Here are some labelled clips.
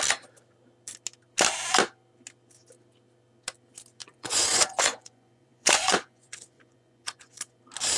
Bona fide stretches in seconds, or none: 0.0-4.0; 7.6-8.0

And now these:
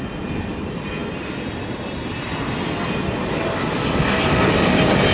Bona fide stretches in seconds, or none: 0.0-5.1

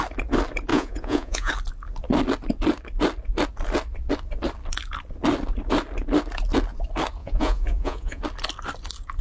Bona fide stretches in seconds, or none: 0.0-0.7; 1.5-7.2; 8.2-9.2

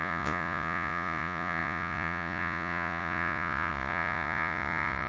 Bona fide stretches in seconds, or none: none

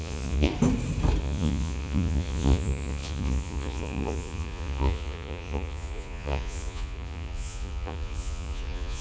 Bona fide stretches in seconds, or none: 0.5-1.2

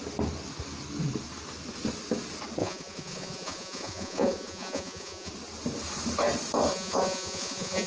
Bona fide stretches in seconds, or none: 0.0-2.6; 5.3-6.7

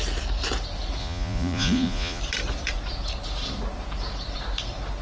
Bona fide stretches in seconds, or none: 0.0-1.0; 2.2-5.0